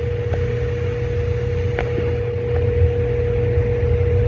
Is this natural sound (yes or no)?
yes